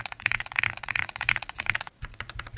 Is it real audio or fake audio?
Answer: fake